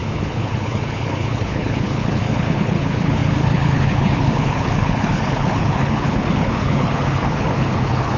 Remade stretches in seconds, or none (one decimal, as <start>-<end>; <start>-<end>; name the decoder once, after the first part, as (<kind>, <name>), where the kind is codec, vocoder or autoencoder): 0.0-8.2 (codec, HILCodec)